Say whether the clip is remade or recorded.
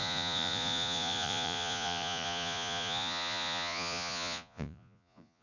remade